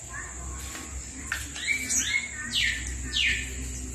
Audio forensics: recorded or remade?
recorded